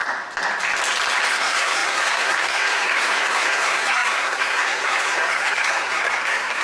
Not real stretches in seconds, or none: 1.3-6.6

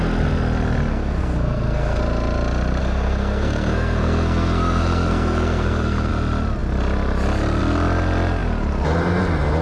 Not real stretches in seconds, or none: 0.9-2.0; 2.8-6.1

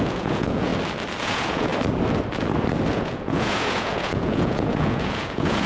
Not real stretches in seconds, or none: 0.0-0.7; 1.2-1.7; 2.9-5.7

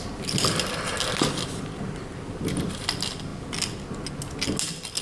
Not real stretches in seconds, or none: none

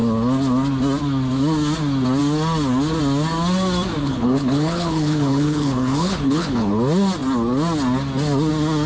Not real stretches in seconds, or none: 4.0-6.7